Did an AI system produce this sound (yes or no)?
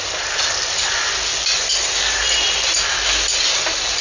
no